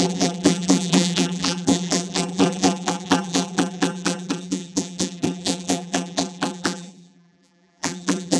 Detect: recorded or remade remade